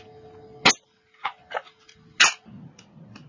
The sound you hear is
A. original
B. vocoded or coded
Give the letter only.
A